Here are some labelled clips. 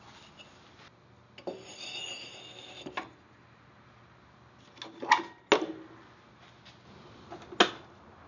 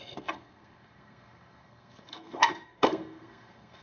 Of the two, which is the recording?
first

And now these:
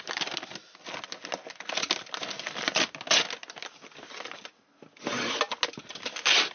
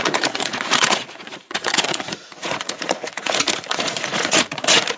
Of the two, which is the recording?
first